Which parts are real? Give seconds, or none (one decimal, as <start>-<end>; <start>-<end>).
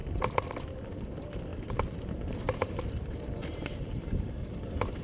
0.0-1.5; 4.5-5.0